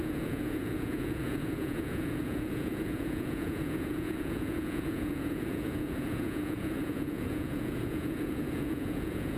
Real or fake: fake